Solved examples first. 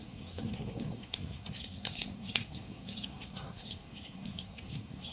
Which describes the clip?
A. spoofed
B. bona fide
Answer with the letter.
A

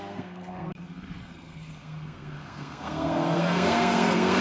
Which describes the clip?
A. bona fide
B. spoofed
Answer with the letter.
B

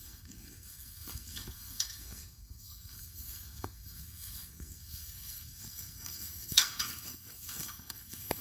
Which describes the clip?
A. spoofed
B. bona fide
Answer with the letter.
A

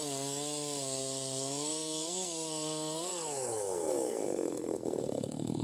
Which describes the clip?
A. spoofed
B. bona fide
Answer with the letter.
A